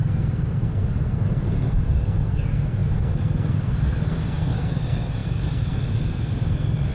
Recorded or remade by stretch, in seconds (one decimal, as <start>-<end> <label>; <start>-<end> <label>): 0.0-6.9 remade